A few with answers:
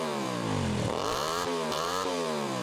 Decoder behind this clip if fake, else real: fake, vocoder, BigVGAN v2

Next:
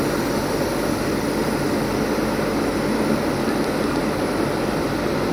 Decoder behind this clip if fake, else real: real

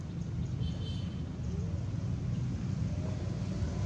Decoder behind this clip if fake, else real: real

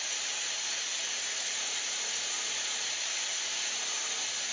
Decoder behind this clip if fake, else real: fake, vocoder, BigVGAN v2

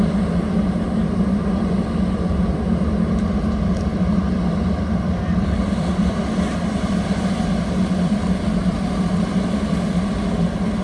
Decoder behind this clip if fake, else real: fake, vocoder, BigVGAN v2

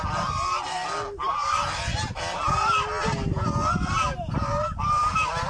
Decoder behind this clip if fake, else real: real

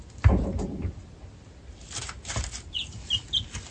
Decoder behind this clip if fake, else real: real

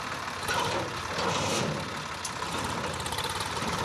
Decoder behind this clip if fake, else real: fake, vocoder, BigVGAN v2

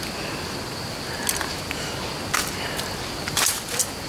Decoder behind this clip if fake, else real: real